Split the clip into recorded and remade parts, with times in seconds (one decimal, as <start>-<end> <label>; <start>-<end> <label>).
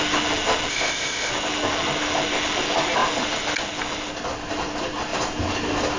0.0-0.7 recorded; 0.7-1.3 remade; 1.3-6.0 recorded